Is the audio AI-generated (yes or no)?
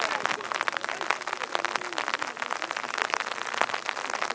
no